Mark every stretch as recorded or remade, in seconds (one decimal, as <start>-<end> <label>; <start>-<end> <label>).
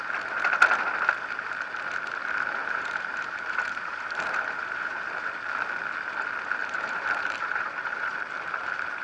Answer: 0.0-2.6 recorded; 2.6-5.3 remade; 5.3-6.6 recorded; 6.6-8.2 remade; 8.2-9.0 recorded